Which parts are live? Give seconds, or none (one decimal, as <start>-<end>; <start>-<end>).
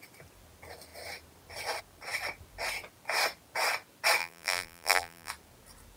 0.0-4.2; 5.3-6.0